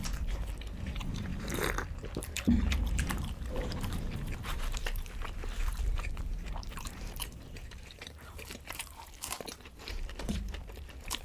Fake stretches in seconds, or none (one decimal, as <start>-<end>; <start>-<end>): 0.0-1.3; 2.5-11.2